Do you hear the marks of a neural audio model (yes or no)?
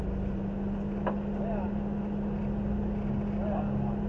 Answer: no